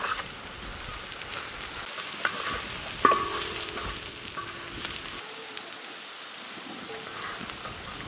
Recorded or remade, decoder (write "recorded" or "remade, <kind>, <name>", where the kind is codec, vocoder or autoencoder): recorded